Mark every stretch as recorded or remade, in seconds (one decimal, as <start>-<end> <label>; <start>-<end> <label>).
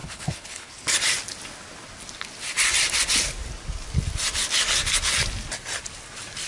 0.0-0.7 remade; 0.7-6.5 recorded